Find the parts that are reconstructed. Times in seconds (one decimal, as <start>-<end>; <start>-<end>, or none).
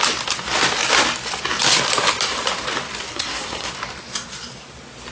3.1-3.7